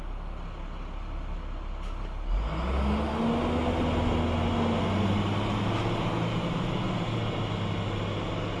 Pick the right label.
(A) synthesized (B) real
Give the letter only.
B